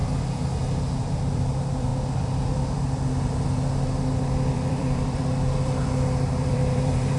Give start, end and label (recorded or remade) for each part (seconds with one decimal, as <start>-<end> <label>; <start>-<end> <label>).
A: 0.0-0.8 recorded; 0.8-1.9 remade; 1.9-4.5 recorded; 4.5-7.2 remade